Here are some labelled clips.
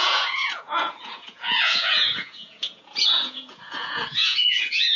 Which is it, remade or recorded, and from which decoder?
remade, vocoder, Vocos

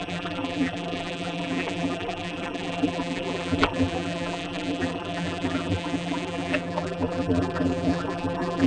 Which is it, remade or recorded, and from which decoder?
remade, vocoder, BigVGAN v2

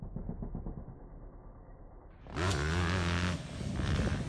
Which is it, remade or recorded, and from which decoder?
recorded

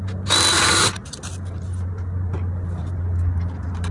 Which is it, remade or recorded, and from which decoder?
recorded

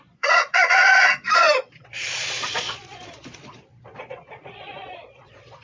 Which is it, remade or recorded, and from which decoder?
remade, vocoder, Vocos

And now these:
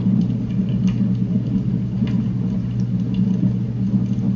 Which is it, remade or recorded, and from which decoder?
recorded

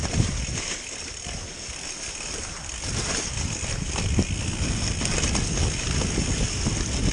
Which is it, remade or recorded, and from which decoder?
recorded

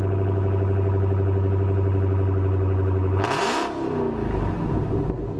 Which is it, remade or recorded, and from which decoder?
recorded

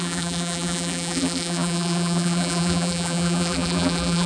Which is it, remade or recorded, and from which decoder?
remade, vocoder, BigVGAN v2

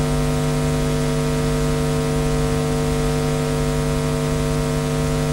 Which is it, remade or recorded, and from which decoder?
recorded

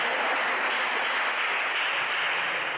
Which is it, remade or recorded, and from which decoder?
recorded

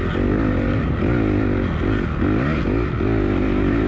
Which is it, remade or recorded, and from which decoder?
recorded